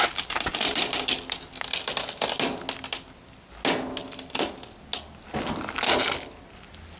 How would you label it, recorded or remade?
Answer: recorded